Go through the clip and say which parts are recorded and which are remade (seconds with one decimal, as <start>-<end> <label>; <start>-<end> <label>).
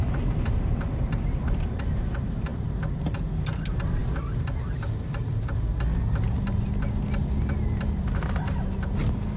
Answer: 0.0-9.4 recorded